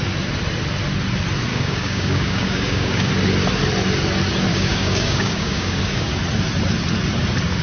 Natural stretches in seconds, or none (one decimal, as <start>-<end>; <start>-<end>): 0.0-1.5; 3.1-4.5; 6.2-7.6